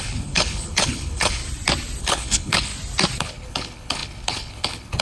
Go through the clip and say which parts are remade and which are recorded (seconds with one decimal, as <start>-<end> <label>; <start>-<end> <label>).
0.0-1.4 remade; 1.4-2.0 recorded; 2.0-2.7 remade; 2.7-3.2 recorded; 3.2-5.0 remade